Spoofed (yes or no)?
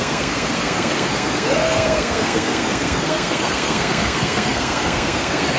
yes